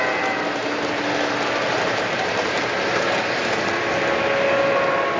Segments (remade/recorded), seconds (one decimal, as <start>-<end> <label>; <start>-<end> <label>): 0.0-5.2 recorded